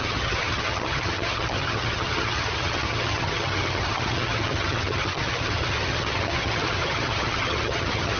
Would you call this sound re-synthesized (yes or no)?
yes